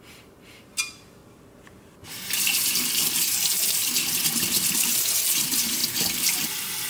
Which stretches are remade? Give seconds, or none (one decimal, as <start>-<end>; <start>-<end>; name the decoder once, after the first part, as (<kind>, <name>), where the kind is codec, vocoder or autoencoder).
0.0-1.2 (vocoder, BigVGAN v2); 4.7-5.8